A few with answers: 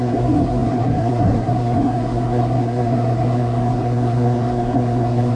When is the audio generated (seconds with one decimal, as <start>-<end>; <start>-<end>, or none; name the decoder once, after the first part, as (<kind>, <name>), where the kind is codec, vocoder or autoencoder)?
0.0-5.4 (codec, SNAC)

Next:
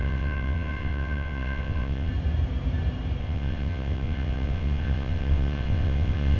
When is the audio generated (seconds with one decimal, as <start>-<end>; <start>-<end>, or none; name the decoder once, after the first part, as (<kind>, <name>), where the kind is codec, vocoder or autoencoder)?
0.0-2.1 (vocoder, WaveNeXt); 3.2-6.4

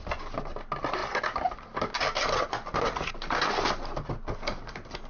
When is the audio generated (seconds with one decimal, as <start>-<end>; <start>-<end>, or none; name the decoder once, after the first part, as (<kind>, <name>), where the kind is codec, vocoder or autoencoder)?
none

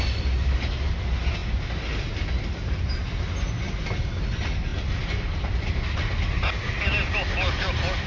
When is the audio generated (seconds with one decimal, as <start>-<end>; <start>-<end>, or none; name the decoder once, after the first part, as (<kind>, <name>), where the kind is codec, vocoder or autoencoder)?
none

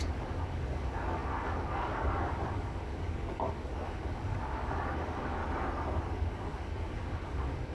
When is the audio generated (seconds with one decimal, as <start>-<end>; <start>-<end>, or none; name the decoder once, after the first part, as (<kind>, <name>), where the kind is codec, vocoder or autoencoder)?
0.0-5.4 (codec, DAC); 6.0-7.7